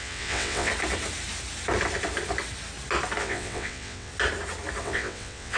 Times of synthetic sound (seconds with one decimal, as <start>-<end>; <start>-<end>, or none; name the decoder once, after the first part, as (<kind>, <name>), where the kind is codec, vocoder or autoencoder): 0.0-0.7 (vocoder, WaveNeXt); 3.2-4.1; 4.8-5.6